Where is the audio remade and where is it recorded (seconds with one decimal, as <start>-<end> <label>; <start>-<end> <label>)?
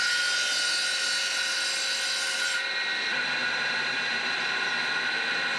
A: 0.0-3.4 recorded; 3.4-4.7 remade; 4.7-5.6 recorded